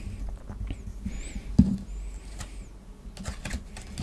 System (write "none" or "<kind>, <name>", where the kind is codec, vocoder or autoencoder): none